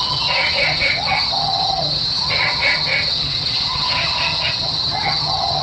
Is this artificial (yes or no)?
yes